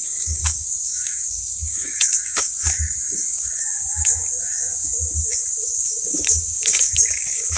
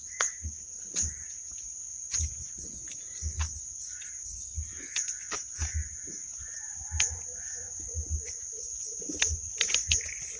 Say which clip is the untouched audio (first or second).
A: second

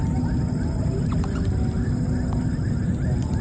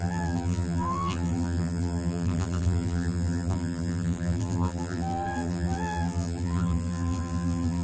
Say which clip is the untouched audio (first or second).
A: first